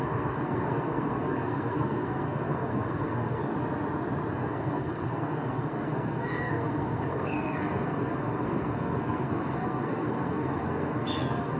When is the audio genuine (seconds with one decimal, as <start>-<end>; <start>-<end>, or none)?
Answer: 3.4-4.3